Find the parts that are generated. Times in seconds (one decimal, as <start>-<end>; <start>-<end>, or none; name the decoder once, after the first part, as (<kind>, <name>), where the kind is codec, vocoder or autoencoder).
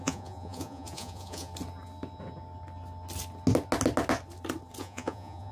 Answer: 0.0-1.5 (vocoder, Vocos); 4.8-5.5